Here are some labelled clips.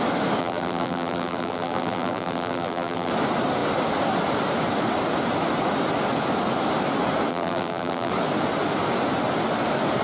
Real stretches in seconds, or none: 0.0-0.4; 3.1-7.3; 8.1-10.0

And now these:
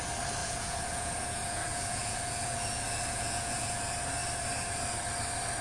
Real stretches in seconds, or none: 0.0-0.4; 3.8-5.6

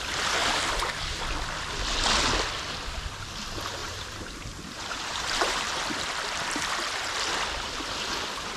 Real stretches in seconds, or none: 0.0-3.8; 5.8-8.6